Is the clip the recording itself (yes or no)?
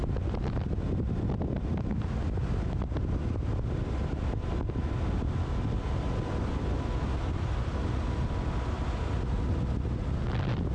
yes